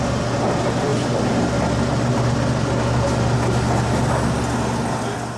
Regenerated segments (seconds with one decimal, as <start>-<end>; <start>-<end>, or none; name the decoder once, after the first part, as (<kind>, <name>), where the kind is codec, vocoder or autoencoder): none

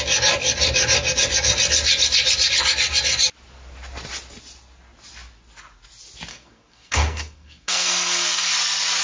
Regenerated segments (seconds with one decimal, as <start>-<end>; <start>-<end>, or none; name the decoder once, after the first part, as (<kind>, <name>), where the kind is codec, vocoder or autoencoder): 6.3-8.5 (codec, SNAC)

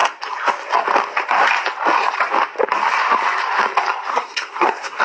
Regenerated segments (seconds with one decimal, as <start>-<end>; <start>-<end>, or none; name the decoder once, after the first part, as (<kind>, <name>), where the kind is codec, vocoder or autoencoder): 4.1-5.0 (codec, SNAC)

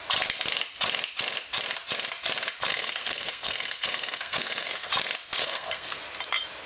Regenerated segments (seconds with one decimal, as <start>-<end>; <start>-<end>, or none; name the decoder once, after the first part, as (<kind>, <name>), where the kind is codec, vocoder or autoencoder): 2.7-4.9 (codec, SNAC); 5.4-6.0

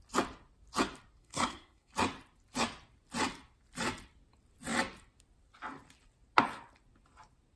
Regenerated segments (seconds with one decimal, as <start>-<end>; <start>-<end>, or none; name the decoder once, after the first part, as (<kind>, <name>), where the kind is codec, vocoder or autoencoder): 1.2-1.9 (codec, SNAC)

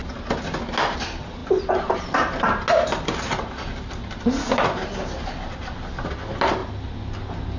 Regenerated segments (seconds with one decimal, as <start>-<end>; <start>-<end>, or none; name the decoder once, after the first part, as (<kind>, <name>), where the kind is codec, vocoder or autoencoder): none